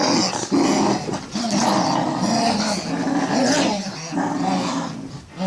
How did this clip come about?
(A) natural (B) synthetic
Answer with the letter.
A